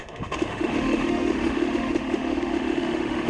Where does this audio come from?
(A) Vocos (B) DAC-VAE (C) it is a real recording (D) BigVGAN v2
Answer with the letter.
B